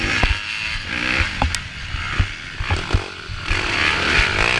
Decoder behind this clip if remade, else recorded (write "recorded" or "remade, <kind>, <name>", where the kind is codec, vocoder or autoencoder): recorded